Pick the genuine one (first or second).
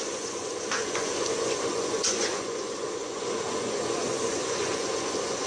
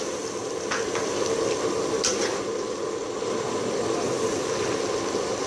second